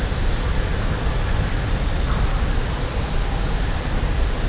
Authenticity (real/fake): real